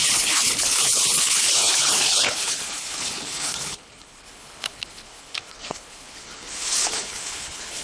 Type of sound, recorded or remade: remade